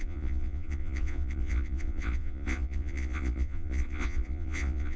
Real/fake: fake